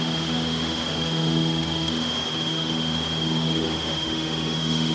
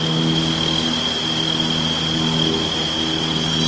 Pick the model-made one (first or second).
first